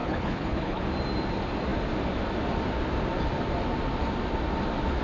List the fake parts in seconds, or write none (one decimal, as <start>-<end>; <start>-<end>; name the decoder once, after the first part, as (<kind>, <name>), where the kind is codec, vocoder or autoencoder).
0.0-0.8 (codec, HILCodec)